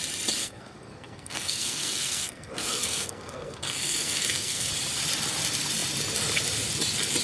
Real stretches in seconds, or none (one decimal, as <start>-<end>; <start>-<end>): 0.0-0.4; 4.7-7.2